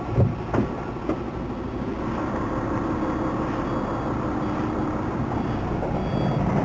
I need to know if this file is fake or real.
real